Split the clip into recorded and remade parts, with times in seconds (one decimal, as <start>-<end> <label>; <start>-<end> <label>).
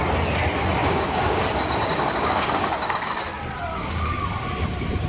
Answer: 0.0-0.8 recorded; 0.8-3.2 remade; 3.2-3.7 recorded; 3.7-4.2 remade; 4.2-5.1 recorded